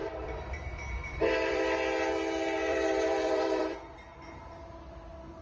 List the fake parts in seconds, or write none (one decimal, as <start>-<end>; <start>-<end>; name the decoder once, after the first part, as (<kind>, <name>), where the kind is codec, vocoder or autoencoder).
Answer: 0.0-1.6 (vocoder, BigVGAN v2); 2.7-4.0